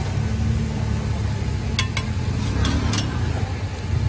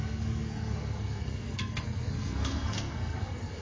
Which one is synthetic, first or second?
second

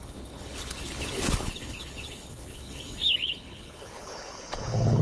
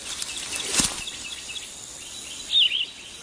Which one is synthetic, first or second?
first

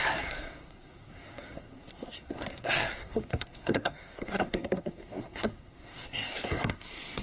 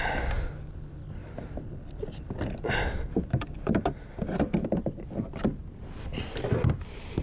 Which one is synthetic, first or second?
first